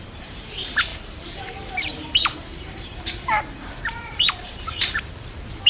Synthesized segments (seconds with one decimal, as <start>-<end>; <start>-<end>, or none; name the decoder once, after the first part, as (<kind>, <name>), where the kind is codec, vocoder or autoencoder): 0.0-5.7 (vocoder, BigVGAN v2)